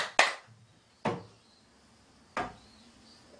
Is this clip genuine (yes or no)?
yes